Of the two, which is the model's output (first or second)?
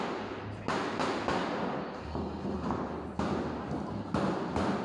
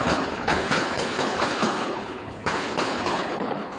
second